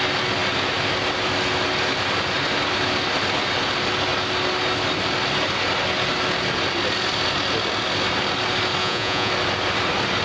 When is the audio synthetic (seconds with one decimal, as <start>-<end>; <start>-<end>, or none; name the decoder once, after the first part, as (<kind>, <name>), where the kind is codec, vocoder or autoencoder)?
8.8-9.3 (vocoder, Vocos)